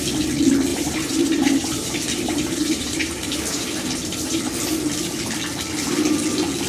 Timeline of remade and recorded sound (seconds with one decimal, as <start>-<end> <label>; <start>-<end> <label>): 0.0-0.7 recorded; 0.7-4.4 remade; 4.4-6.7 recorded